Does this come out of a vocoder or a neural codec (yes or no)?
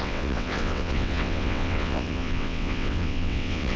yes